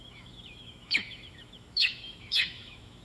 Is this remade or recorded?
remade